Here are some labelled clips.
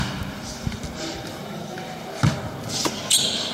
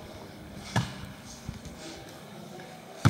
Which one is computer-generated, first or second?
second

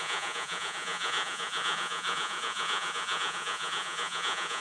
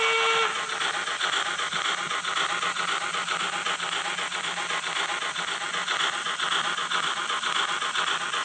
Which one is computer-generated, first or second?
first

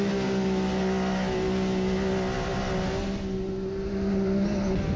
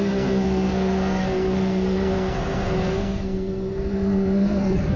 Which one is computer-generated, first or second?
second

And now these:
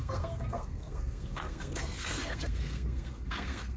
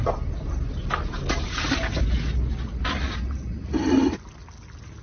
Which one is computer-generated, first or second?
first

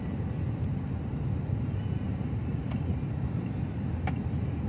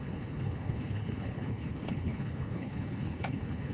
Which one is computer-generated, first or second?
second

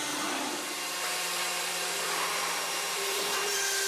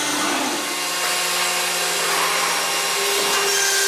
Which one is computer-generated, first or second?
first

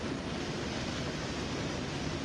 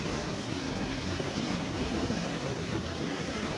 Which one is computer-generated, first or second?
second